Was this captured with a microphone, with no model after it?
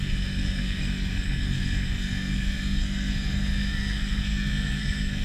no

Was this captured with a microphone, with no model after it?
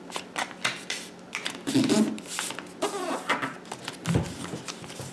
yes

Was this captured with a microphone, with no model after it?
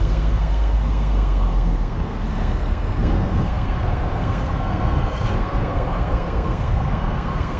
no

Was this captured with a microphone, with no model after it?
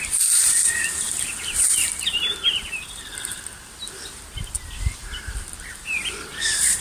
no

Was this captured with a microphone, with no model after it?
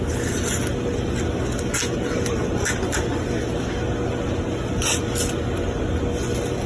yes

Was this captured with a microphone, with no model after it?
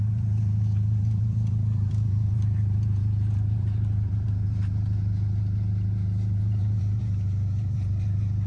no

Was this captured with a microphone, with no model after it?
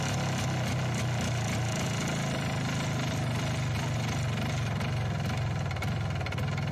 yes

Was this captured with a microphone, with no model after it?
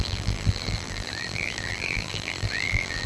no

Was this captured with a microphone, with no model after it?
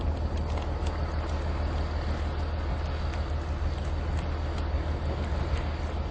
yes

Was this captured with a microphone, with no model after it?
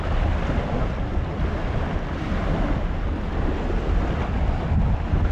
yes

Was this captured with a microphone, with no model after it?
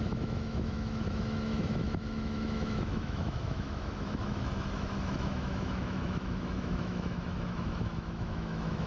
no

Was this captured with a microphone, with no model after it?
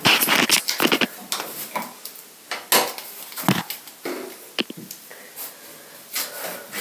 yes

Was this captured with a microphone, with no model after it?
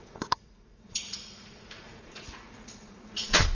no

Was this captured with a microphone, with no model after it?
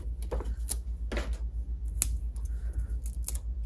yes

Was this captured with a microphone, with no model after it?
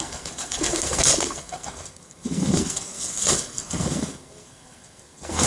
no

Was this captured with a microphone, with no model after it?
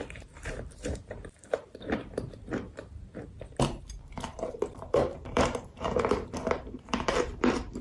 no